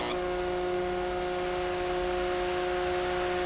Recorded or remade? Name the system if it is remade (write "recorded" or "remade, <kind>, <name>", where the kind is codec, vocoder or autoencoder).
recorded